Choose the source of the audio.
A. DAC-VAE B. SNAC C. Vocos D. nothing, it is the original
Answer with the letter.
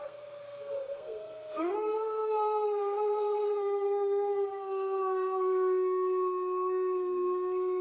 B